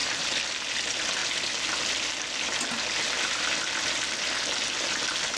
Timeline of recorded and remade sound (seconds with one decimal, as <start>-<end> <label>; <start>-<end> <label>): 0.0-5.4 recorded